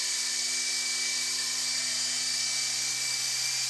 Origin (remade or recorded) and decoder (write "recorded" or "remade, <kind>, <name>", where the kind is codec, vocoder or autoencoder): recorded